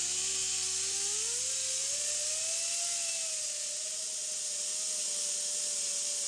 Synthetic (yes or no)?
no